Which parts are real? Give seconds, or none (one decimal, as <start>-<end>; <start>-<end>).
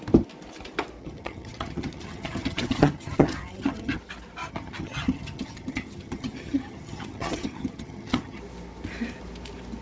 0.0-1.0; 4.0-4.4; 8.4-9.8